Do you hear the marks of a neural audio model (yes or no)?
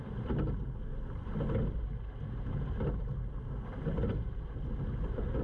no